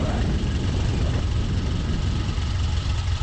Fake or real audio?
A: real